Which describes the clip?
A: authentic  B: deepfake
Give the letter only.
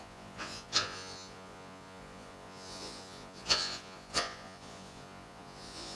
B